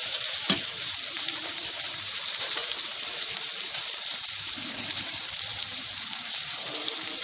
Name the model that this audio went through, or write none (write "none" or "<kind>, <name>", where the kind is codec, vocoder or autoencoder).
vocoder, BigVGAN v2